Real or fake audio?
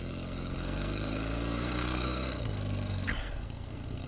fake